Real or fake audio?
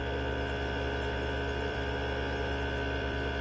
fake